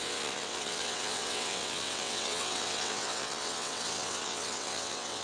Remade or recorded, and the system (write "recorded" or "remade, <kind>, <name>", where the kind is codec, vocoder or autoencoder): remade, vocoder, WaveNeXt